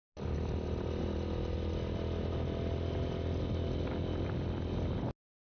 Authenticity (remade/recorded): recorded